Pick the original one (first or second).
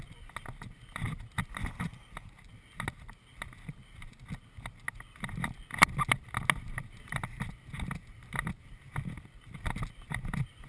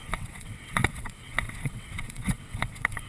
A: first